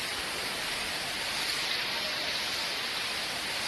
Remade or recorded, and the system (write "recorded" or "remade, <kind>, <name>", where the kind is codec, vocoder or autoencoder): recorded